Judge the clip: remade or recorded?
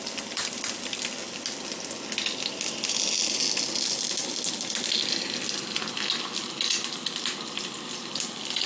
recorded